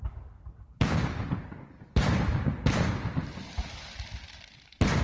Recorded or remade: recorded